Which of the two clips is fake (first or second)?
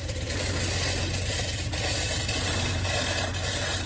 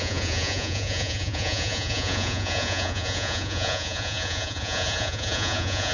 second